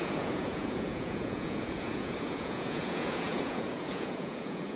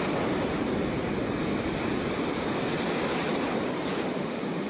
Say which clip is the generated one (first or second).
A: first